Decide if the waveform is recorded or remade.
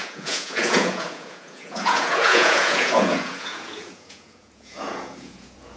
remade